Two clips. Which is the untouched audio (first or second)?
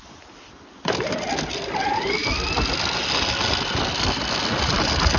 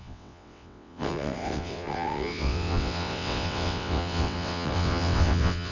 first